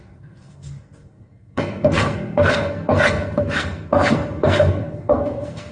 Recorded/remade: remade